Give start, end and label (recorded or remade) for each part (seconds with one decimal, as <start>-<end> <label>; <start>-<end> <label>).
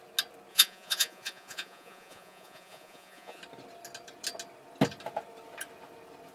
0.0-0.5 recorded; 0.5-3.4 remade; 3.4-6.3 recorded